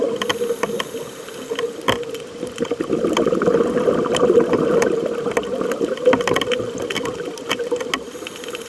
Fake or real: real